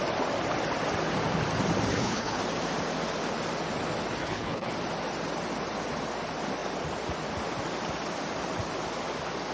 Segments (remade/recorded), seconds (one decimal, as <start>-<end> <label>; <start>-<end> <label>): 0.0-1.9 recorded; 1.9-2.4 remade; 2.4-4.2 recorded; 4.2-4.7 remade; 4.7-9.5 recorded